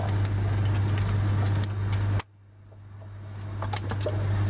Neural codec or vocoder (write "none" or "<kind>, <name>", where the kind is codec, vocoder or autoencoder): none